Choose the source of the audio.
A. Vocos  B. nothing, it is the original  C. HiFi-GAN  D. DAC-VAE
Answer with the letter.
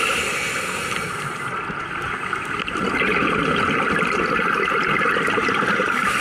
B